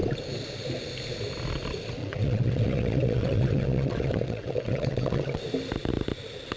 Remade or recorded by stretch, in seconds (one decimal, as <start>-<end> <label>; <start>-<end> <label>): 0.0-2.0 recorded; 2.0-5.4 remade; 5.4-6.6 recorded

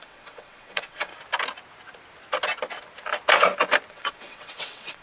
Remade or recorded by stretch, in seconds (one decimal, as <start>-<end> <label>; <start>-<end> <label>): 0.0-1.1 remade; 1.1-3.9 recorded; 3.9-5.0 remade

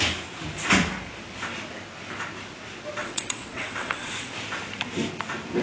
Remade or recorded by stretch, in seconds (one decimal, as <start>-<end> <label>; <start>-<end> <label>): 0.0-3.0 recorded; 3.0-4.3 remade; 4.3-5.6 recorded

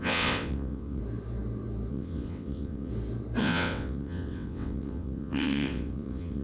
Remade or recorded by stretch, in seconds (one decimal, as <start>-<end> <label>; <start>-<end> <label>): 0.0-1.0 remade; 1.0-1.9 recorded; 1.9-2.9 remade; 2.9-3.4 recorded; 3.4-6.4 remade

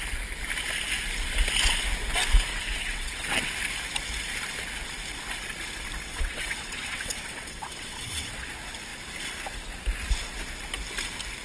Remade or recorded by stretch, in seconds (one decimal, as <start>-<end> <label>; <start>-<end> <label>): 0.0-2.5 recorded; 2.5-3.5 remade; 3.5-6.1 recorded; 6.1-8.5 remade; 8.5-11.4 recorded